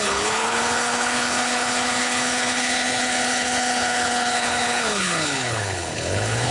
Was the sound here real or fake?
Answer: fake